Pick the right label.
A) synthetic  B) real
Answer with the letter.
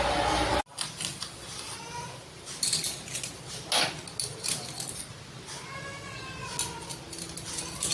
B